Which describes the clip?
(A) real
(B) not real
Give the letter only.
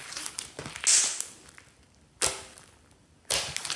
A